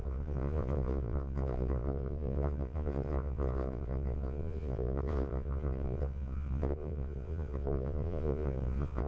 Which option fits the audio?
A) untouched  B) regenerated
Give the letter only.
B